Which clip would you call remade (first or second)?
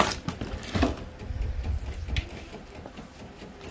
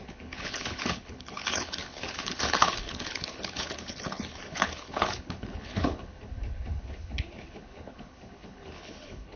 second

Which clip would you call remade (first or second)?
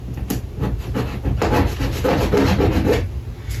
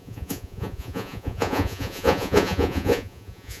second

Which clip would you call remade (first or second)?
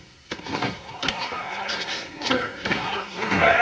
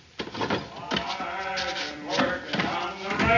first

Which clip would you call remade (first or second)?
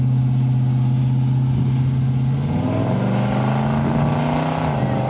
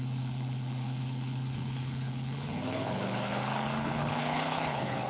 second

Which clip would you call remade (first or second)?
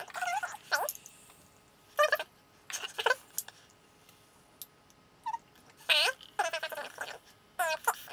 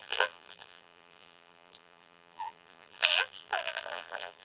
second